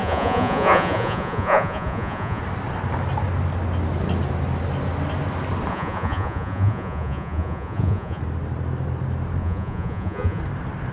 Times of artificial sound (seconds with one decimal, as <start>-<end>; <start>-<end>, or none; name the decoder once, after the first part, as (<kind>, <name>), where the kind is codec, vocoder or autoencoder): 0.0-2.4 (vocoder, Vocos); 5.7-8.2; 9.4-10.4